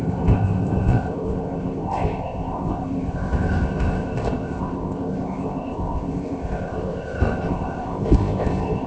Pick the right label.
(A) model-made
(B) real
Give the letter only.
A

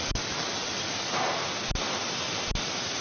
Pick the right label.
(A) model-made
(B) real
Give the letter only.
B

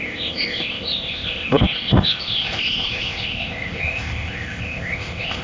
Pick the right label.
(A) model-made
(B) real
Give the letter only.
A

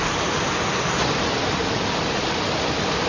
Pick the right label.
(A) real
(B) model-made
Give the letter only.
A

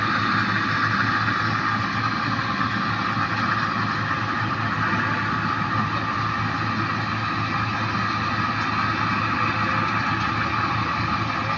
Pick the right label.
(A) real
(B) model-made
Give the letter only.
A